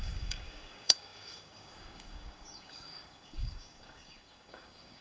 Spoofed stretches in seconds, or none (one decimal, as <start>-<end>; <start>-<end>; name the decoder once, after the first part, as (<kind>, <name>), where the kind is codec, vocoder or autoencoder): 0.0-5.0 (codec, DAC)